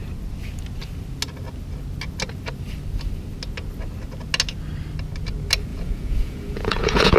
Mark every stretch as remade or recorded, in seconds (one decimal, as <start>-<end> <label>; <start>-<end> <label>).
0.0-5.7 recorded; 5.7-7.2 remade